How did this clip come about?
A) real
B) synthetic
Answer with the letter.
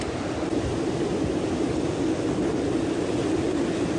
A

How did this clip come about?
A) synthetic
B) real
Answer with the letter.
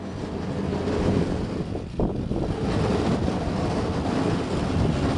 B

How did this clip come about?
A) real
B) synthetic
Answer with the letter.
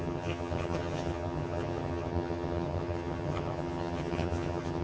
B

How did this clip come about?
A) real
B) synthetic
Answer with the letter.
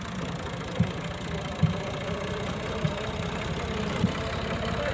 A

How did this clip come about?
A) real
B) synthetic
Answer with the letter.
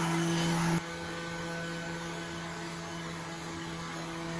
B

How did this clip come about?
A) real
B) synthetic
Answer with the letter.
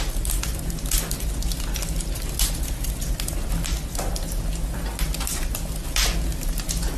A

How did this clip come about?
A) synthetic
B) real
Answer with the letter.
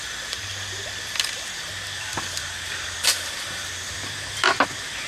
A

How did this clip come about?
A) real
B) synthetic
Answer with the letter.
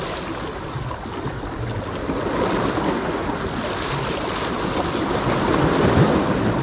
A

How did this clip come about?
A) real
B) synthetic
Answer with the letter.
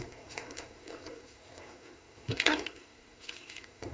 B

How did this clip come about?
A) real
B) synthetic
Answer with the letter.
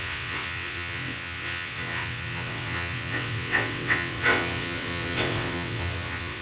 B